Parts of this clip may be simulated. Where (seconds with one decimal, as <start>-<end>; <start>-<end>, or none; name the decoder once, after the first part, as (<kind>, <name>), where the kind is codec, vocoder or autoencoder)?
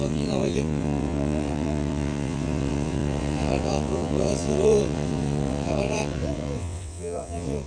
0.0-7.7 (vocoder, WaveNeXt)